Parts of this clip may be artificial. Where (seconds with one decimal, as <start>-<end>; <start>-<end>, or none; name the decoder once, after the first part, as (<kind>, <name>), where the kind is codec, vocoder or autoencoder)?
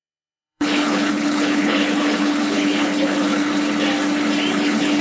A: 0.0-3.5 (codec, HILCodec); 4.5-5.0